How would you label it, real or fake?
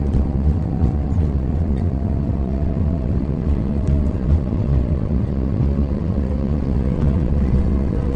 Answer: fake